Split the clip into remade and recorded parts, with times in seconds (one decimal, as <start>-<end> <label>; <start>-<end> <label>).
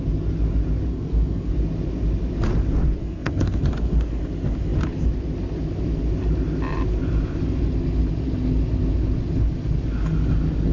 0.0-0.9 recorded; 0.9-1.5 remade; 1.5-3.0 recorded; 3.0-4.2 remade; 4.2-10.7 recorded